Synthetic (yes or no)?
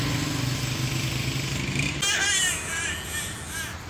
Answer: no